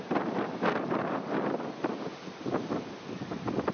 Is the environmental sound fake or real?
real